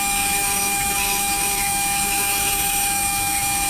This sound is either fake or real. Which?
fake